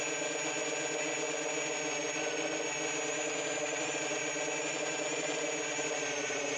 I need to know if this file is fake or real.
real